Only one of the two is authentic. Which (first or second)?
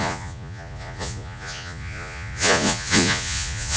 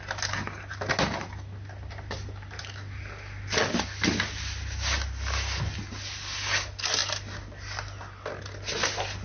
second